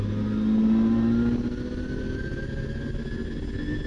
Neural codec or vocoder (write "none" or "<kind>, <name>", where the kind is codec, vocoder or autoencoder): none